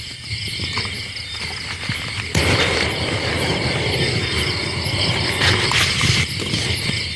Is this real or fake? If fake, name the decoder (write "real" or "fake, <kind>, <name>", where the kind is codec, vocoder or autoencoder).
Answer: real